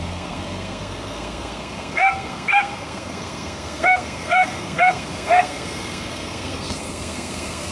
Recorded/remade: remade